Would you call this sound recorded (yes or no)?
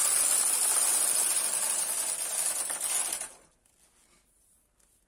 yes